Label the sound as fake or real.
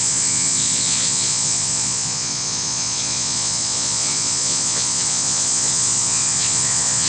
fake